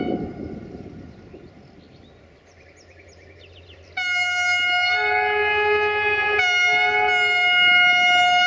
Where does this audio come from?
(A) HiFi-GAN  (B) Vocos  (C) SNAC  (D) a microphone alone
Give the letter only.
D